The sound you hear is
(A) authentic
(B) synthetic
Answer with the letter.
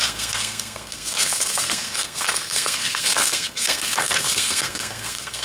B